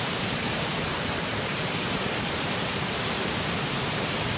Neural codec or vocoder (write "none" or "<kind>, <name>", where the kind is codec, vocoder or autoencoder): vocoder, BigVGAN v2